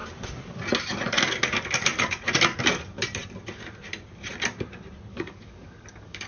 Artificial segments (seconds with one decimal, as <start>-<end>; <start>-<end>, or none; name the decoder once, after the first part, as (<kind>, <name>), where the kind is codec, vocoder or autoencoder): 5.1-6.3 (codec, DAC)